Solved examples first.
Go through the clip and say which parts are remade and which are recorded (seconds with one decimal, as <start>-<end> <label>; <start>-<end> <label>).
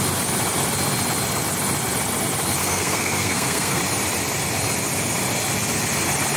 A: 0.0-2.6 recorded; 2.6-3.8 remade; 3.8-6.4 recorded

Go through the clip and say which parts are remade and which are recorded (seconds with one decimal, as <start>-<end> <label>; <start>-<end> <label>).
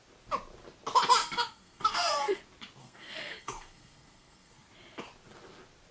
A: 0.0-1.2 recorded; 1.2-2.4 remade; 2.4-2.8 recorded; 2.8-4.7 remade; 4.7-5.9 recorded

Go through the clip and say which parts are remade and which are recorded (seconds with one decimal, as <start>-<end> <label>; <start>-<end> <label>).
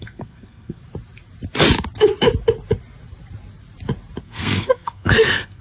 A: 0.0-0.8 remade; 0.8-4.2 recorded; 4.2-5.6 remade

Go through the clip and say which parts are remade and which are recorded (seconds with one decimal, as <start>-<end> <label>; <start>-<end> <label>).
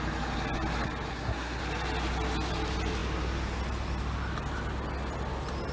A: 0.0-1.1 recorded; 1.1-1.6 remade; 1.6-5.7 recorded